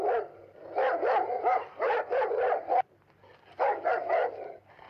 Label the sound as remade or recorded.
recorded